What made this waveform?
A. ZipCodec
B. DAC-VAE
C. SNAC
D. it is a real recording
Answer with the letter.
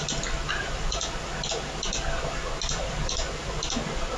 D